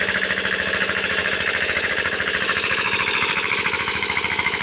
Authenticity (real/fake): fake